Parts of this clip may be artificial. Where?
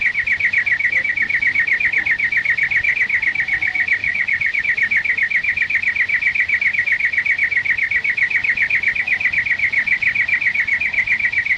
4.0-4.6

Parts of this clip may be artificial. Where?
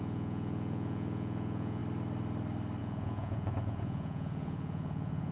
0.0-1.8; 2.8-5.3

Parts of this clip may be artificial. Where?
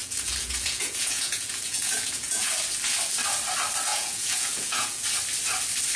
0.0-2.5; 3.9-5.0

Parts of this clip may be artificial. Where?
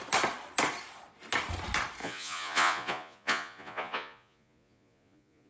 2.0-5.5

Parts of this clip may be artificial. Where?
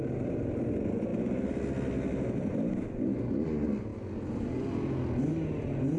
none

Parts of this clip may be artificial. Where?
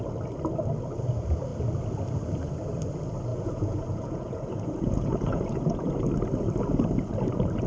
3.3-5.9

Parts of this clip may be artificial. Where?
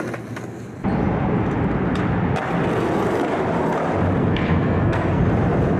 4.2-5.2